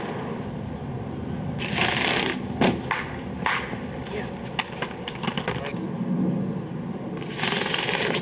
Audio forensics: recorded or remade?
recorded